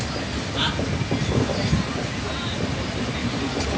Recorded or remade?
recorded